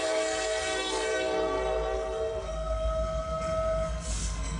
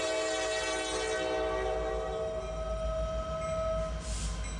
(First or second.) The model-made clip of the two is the first